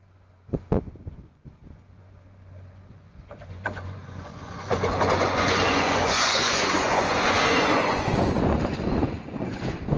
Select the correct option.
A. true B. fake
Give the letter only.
B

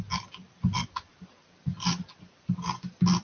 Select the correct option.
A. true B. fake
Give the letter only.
A